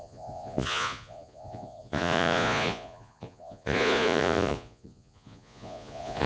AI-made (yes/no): yes